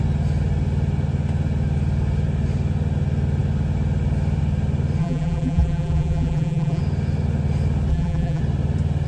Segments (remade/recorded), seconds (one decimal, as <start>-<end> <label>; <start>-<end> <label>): 0.0-5.0 recorded; 5.0-6.8 remade; 6.8-7.9 recorded; 7.9-8.4 remade; 8.4-9.1 recorded